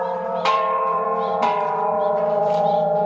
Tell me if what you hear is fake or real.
fake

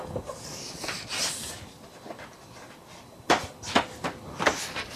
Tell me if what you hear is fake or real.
real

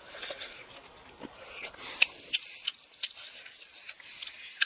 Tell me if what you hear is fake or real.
real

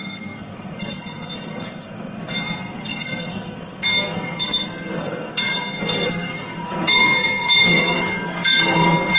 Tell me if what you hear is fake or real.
fake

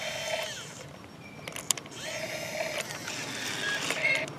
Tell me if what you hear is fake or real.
fake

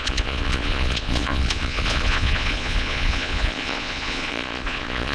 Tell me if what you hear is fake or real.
fake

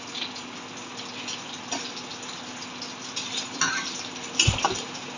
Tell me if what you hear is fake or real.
real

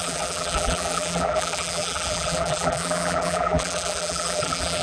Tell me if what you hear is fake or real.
fake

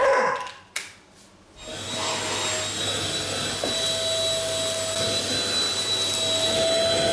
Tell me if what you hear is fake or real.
real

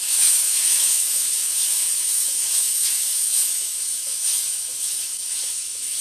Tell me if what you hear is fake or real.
fake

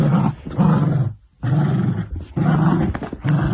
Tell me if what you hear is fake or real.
real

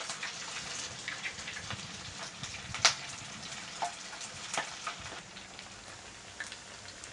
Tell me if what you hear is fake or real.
real